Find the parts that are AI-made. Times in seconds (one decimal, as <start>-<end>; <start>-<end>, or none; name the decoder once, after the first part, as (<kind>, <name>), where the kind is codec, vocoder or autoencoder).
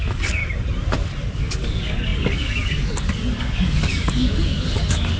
0.0-0.4 (codec, DAC); 1.4-5.2